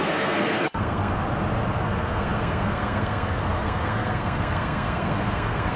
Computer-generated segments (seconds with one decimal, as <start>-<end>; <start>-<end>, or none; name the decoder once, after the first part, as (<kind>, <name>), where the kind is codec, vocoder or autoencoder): 0.0-1.2 (codec, SNAC); 1.8-5.8